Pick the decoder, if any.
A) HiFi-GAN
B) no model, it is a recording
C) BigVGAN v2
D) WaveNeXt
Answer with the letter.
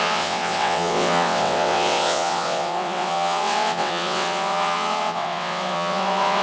D